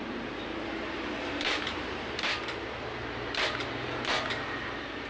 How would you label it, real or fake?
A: fake